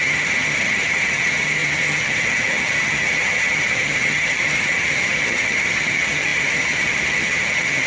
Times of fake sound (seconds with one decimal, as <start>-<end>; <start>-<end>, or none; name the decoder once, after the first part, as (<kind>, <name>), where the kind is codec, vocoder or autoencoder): 0.0-7.9 (vocoder, HiFi-GAN)